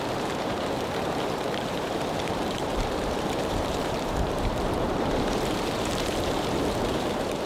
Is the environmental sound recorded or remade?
remade